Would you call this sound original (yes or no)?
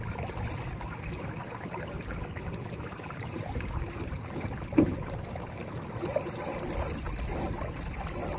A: yes